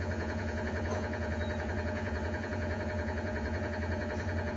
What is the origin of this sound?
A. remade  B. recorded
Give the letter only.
A